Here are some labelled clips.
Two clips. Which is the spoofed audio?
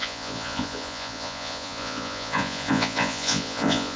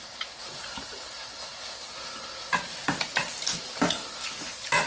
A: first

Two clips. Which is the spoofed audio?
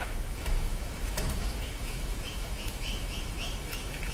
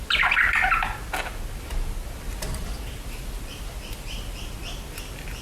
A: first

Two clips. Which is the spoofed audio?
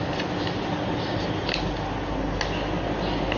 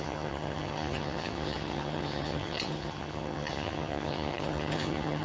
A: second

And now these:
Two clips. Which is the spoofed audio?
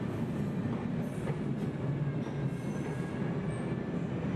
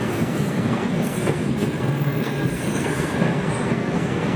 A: second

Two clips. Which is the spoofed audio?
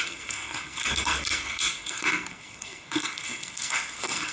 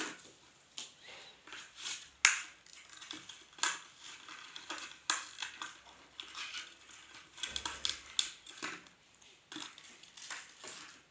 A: first